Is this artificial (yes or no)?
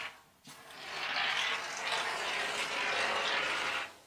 no